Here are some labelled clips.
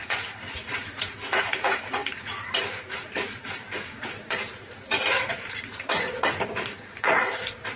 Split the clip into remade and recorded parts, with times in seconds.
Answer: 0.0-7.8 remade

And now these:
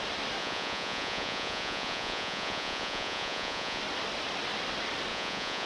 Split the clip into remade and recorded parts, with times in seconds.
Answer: 0.0-0.4 recorded; 0.4-3.8 remade; 3.8-5.1 recorded; 5.1-5.7 remade

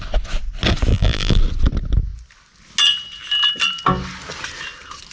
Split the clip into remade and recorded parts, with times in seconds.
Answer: 0.0-0.9 recorded; 0.9-1.4 remade; 1.4-5.1 recorded